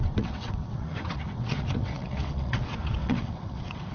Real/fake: fake